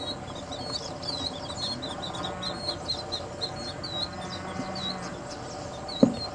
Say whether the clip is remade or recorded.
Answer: recorded